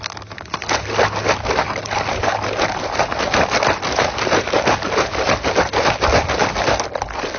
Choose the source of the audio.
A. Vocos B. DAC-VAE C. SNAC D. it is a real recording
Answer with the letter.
D